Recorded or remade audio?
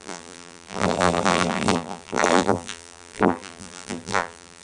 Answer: remade